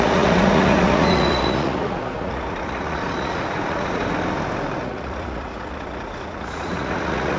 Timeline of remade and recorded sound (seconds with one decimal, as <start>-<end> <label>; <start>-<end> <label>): 0.0-4.0 remade; 4.0-4.8 recorded; 4.8-7.4 remade